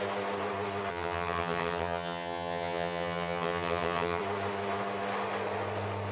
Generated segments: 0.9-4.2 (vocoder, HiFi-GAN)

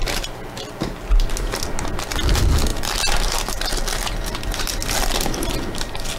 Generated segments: none

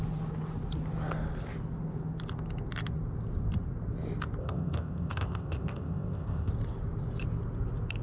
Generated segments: 4.4-6.5 (codec, ZipCodec)

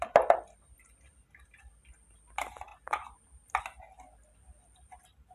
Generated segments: none